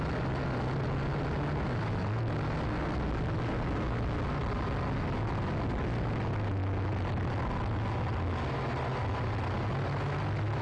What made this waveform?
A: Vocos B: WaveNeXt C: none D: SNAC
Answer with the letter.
C